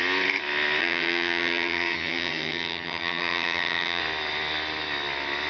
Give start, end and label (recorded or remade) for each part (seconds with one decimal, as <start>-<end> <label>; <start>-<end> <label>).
0.0-0.8 recorded; 0.8-4.0 remade; 4.0-5.5 recorded